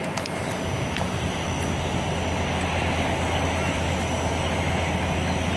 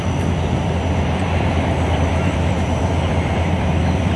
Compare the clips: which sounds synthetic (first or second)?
second